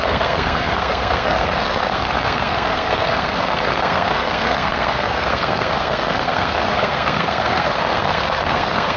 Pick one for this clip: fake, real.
fake